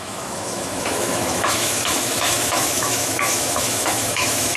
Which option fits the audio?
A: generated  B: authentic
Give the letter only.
A